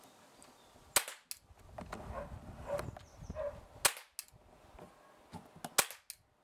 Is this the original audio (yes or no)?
yes